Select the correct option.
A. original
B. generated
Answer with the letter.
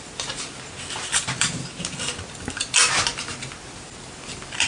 A